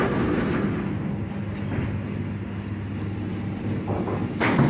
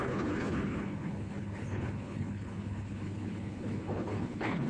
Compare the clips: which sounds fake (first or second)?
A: second